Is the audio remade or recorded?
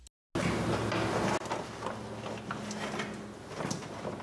recorded